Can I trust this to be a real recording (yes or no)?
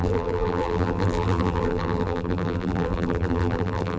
no